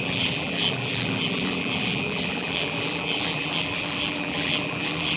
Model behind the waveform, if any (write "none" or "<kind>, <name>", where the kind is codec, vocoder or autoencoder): vocoder, BigVGAN v2